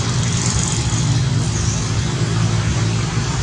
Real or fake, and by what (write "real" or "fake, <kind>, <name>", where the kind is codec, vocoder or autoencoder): real